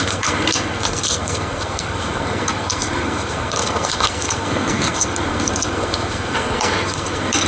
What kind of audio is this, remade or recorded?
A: remade